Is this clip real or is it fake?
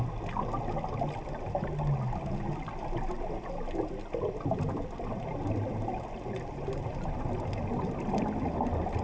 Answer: real